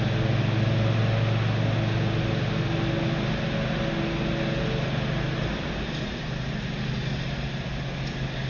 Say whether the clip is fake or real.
real